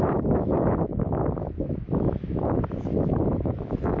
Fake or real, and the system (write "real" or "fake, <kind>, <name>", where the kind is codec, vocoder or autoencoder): fake, autoencoder, DAC-VAE